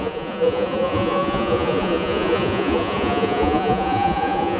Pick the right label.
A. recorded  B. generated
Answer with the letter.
B